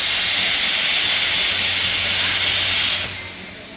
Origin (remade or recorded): recorded